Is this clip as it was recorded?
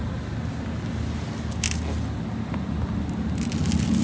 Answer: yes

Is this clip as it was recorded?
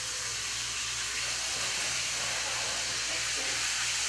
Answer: yes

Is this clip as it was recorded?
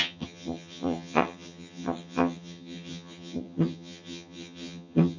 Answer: no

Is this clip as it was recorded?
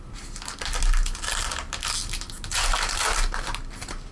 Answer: yes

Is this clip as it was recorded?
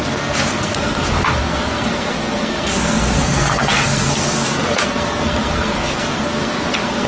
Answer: no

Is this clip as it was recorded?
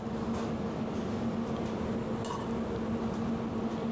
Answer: yes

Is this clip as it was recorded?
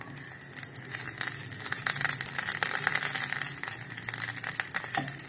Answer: yes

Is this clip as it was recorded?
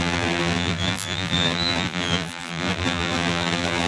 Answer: no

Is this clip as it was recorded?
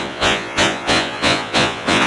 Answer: no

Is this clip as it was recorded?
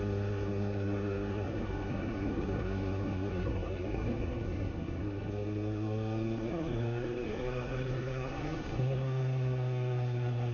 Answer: no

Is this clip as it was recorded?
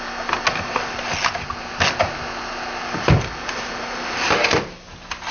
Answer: yes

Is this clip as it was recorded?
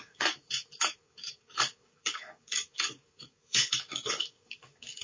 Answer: no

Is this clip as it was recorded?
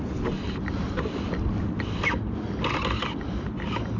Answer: yes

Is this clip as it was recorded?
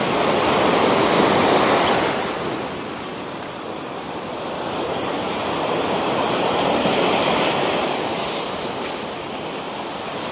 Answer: no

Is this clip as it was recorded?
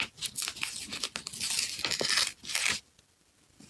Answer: yes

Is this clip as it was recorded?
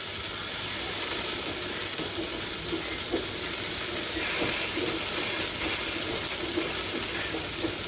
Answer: yes